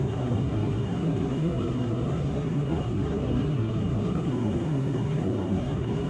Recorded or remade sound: remade